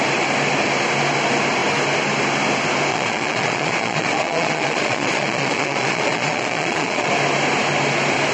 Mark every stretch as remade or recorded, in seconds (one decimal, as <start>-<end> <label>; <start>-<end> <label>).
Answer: 0.0-2.9 recorded; 2.9-7.1 remade; 7.1-8.3 recorded